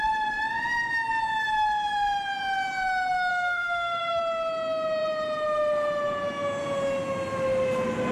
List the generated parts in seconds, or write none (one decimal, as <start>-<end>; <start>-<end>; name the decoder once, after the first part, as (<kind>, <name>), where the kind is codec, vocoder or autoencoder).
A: 3.3-4.2 (codec, SNAC)